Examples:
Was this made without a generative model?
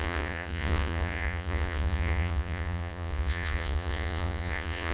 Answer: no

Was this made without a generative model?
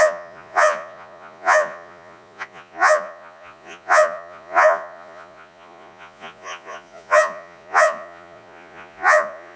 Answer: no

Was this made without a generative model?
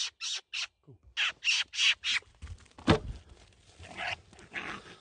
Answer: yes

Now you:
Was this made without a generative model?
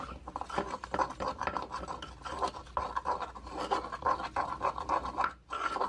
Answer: yes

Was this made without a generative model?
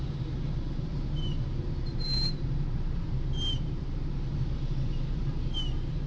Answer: no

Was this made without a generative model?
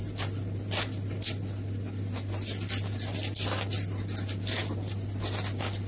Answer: yes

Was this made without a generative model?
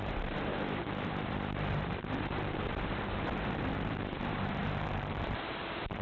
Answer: no